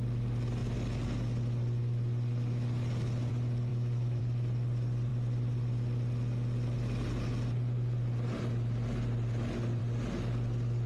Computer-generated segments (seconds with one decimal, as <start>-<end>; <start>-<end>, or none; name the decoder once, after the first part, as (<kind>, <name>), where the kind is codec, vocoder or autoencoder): 3.7-4.2 (autoencoder, DAC-VAE)